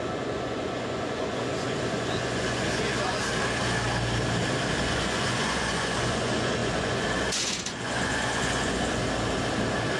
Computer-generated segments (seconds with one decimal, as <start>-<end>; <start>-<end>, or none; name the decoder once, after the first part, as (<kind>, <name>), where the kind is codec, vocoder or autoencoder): 0.0-3.2 (vocoder, Vocos); 4.8-9.0